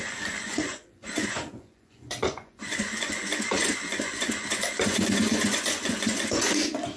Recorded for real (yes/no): no